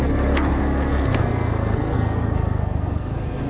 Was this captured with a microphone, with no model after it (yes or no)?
no